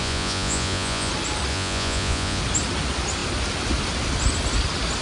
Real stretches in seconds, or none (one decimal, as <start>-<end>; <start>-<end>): 1.1-1.5; 2.4-5.0